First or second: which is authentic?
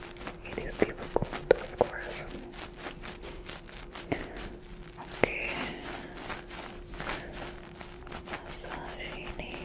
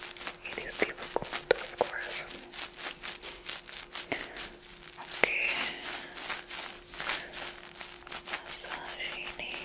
second